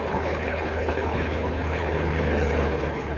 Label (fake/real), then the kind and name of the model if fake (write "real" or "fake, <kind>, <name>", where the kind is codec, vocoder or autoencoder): fake, codec, HILCodec